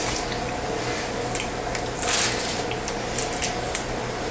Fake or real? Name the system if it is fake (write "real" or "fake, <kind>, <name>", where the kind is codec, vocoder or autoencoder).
real